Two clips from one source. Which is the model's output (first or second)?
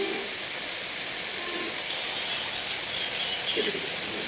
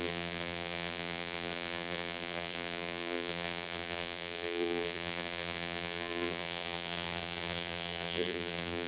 second